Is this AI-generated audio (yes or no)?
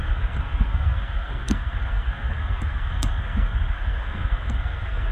yes